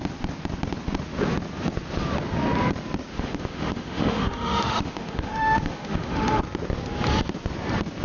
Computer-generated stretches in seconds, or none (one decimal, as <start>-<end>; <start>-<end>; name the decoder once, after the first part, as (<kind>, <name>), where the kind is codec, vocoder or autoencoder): 3.1-6.4 (autoencoder, DAC-VAE)